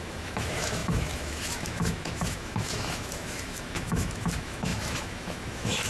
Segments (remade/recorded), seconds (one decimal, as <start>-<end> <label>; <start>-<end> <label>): 0.0-5.9 remade